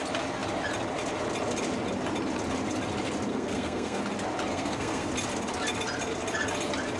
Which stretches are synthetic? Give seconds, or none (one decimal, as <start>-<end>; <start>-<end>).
3.3-4.0; 4.5-5.1